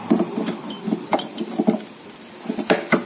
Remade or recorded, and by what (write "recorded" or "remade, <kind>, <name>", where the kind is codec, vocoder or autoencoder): recorded